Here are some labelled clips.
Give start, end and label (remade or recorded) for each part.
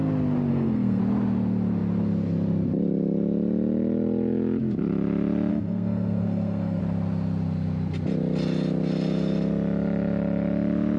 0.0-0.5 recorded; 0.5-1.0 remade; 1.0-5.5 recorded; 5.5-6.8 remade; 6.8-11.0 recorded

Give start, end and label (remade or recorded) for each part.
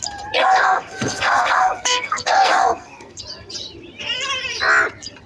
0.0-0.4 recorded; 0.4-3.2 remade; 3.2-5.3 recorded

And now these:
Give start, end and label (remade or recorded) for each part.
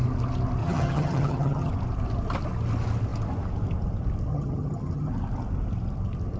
0.0-0.6 recorded; 0.6-1.7 remade; 1.7-4.3 recorded; 4.3-5.1 remade; 5.1-6.4 recorded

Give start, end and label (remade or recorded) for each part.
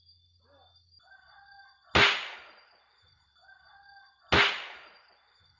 0.0-5.6 recorded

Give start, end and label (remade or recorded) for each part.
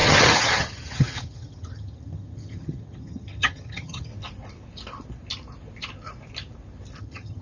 0.0-4.1 remade; 4.1-7.0 recorded; 7.0-7.4 remade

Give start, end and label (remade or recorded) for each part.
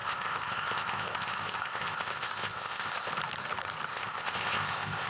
0.0-3.1 remade; 3.1-3.9 recorded; 3.9-5.1 remade